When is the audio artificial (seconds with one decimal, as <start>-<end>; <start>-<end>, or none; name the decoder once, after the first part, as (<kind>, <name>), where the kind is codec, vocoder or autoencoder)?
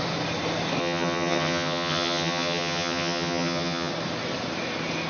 0.8-3.9 (vocoder, HiFi-GAN)